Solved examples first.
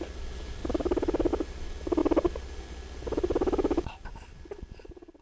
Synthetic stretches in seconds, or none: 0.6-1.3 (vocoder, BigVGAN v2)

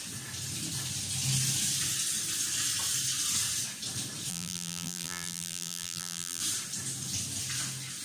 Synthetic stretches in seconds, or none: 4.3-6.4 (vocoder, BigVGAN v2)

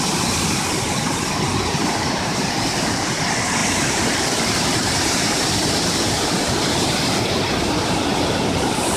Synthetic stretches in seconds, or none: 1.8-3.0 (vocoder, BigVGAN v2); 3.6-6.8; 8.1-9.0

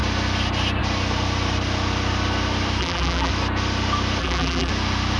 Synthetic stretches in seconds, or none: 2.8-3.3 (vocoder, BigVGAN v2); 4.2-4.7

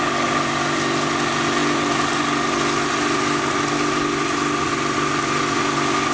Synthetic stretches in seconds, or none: none

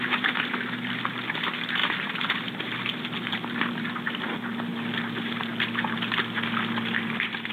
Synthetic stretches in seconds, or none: 1.8-2.5 (vocoder, BigVGAN v2)